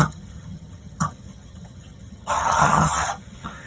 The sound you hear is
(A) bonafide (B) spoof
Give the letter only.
B